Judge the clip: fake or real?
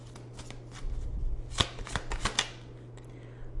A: real